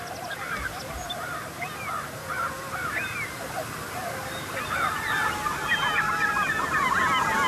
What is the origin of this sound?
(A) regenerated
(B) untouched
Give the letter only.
B